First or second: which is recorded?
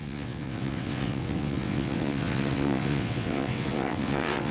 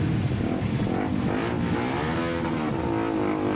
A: second